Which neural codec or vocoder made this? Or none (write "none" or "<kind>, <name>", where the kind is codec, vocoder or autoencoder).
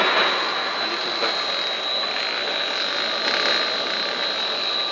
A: none